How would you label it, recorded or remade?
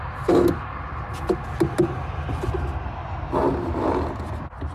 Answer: recorded